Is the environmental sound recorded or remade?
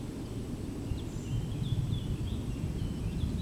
recorded